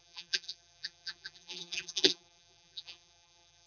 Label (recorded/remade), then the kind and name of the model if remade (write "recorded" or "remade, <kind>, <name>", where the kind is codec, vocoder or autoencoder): remade, vocoder, BigVGAN v2